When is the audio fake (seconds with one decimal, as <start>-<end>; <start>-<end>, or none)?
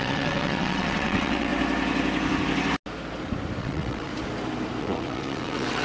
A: 0.0-1.5; 3.6-4.1; 4.8-5.8